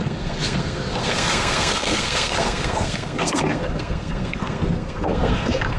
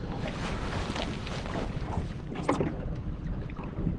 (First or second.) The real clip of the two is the second